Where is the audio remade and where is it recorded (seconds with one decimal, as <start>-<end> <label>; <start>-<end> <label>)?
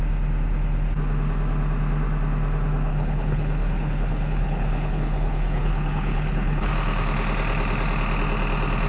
0.0-2.9 recorded; 2.9-6.7 remade; 6.7-8.9 recorded